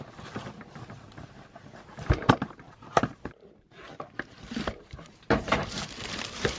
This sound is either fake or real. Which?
fake